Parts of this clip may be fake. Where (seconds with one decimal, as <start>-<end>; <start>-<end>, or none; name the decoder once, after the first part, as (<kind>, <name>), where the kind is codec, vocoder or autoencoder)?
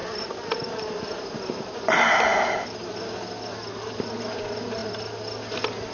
0.0-0.8 (vocoder, BigVGAN v2); 2.3-2.9